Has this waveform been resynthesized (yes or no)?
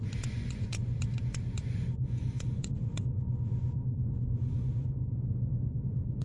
yes